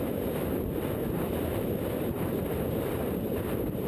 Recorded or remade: remade